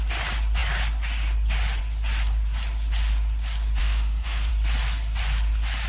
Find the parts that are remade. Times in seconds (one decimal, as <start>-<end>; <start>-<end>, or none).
3.8-4.5